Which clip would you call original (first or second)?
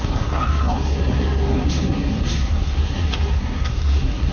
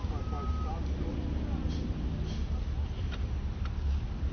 second